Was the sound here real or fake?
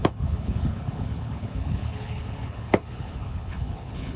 fake